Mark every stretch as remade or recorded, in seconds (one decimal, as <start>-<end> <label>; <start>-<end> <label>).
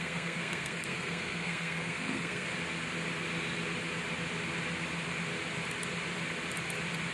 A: 0.0-2.5 remade; 2.5-7.1 recorded